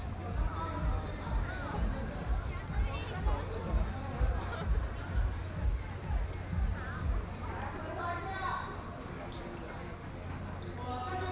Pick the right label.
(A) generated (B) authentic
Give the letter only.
B